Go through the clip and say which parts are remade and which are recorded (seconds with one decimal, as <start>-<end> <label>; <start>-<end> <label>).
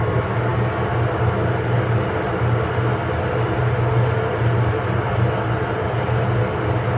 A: 0.0-7.0 recorded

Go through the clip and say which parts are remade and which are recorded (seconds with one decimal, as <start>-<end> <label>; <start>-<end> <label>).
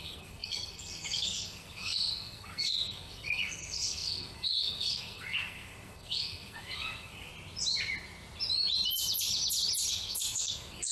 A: 0.0-7.3 remade; 7.3-9.9 recorded; 9.9-10.9 remade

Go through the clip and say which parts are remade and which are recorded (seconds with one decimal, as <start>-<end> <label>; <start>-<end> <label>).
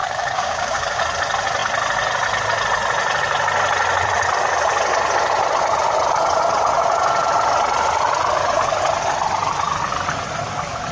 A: 0.0-1.0 remade; 1.0-10.9 recorded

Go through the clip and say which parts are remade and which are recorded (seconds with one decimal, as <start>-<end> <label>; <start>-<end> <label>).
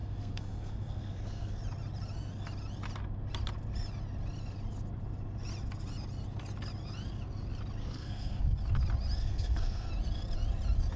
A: 0.0-1.6 remade; 1.6-7.8 recorded; 7.8-8.4 remade; 8.4-9.2 recorded; 9.2-9.9 remade; 9.9-11.0 recorded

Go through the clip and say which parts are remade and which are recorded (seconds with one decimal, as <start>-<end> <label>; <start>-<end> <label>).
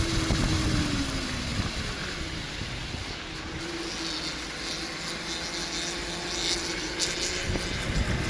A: 0.0-8.3 recorded